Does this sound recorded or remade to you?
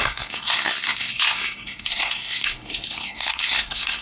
remade